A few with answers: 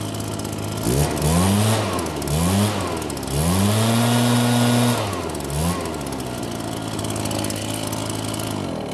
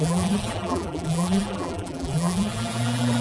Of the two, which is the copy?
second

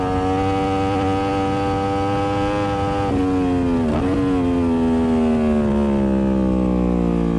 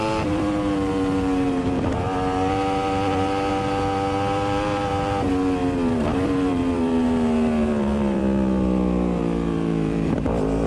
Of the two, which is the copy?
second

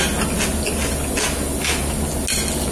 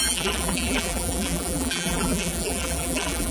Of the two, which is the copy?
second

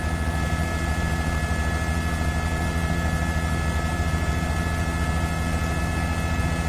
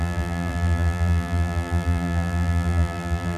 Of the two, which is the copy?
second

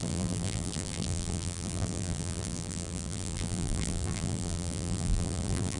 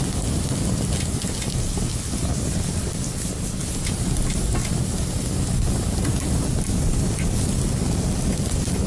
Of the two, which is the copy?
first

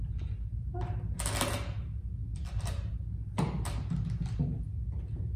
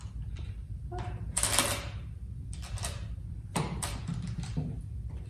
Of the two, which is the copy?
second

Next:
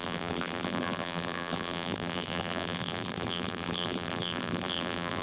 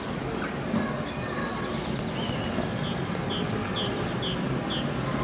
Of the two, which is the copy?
first